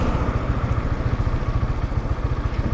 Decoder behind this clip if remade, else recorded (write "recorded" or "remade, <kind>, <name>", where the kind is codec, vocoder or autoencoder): recorded